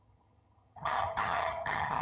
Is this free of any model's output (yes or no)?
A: no